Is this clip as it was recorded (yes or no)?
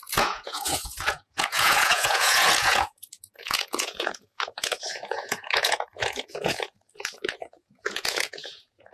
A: no